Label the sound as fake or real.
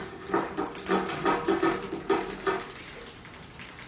real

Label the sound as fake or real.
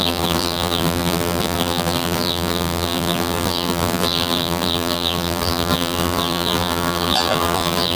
fake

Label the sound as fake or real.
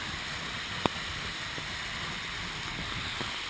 real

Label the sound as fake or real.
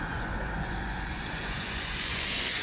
fake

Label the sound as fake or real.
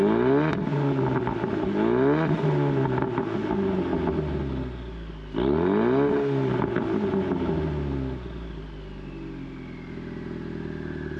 real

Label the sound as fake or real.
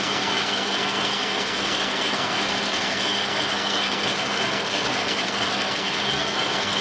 fake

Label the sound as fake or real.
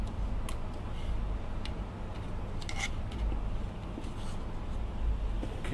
real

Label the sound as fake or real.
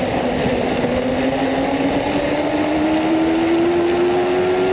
real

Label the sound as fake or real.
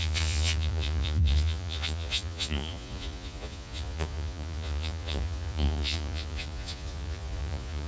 fake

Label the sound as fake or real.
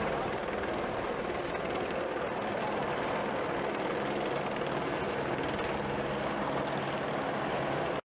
real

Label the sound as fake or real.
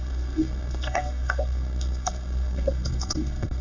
fake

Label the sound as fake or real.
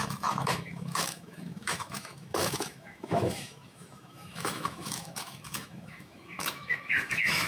fake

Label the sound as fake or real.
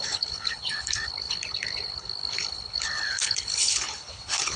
fake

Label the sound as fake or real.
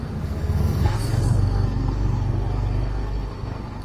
fake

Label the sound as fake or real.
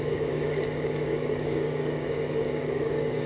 fake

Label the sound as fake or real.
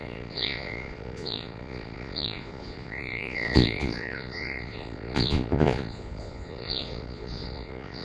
fake